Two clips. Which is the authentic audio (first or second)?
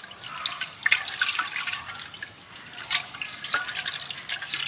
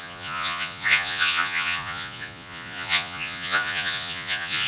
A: first